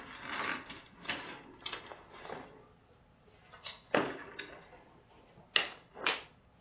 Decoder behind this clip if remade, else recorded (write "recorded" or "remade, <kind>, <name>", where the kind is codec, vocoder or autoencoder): recorded